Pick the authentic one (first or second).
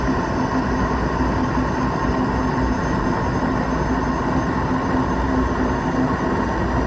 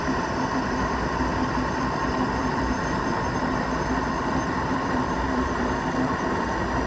first